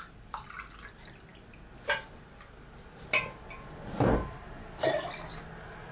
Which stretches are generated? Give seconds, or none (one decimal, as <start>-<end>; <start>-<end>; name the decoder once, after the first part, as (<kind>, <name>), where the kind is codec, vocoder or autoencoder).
none